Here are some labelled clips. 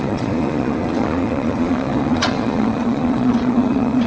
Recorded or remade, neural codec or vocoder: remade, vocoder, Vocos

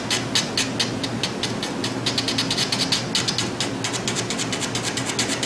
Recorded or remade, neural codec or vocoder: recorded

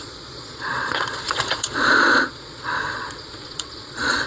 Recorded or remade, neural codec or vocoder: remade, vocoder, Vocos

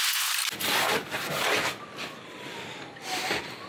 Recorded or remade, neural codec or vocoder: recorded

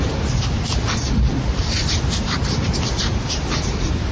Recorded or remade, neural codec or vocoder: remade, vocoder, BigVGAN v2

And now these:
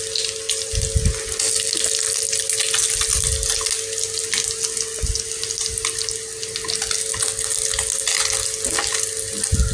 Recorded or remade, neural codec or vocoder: recorded